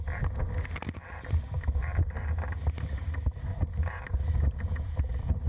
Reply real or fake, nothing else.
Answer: real